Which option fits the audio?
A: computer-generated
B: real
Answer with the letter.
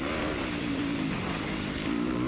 B